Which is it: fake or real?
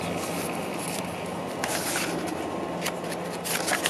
real